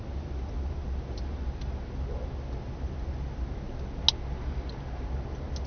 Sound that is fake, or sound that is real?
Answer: real